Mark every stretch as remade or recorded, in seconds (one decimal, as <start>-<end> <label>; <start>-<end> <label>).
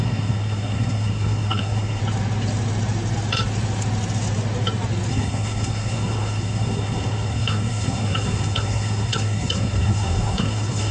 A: 0.0-2.0 remade; 2.0-5.1 recorded; 5.1-10.9 remade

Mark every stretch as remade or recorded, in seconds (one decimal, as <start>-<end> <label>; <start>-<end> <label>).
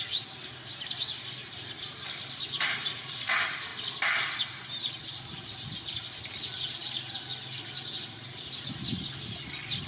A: 0.0-1.4 recorded; 1.4-3.3 remade; 3.3-9.9 recorded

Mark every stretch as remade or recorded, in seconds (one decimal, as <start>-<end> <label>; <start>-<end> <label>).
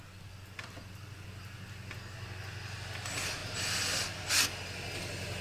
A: 0.0-5.4 recorded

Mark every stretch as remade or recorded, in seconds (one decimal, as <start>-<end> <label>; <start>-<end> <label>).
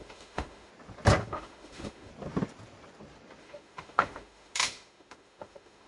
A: 0.0-0.7 remade; 0.7-1.2 recorded; 1.2-2.1 remade; 2.1-3.4 recorded; 3.4-5.9 remade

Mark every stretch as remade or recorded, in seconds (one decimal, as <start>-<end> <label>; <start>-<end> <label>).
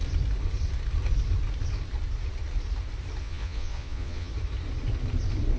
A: 0.0-3.2 recorded; 3.2-4.3 remade; 4.3-5.6 recorded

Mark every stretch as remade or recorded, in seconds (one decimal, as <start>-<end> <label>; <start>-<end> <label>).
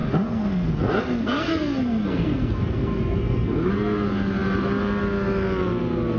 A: 0.0-3.7 remade; 3.7-6.2 recorded